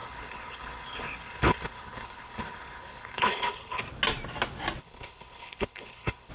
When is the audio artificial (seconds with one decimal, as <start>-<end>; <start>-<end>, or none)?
0.0-3.8; 4.8-6.3